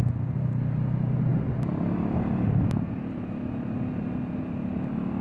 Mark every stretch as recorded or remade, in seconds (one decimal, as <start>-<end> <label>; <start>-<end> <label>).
0.0-5.2 recorded